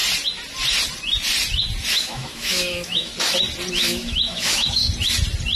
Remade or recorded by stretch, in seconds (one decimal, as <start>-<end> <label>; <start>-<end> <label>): 0.0-1.9 recorded; 1.9-3.1 remade; 3.1-3.7 recorded; 3.7-4.8 remade; 4.8-5.6 recorded